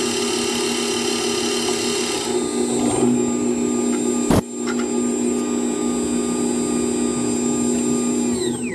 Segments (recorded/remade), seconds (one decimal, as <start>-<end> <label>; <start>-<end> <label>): 0.0-8.7 recorded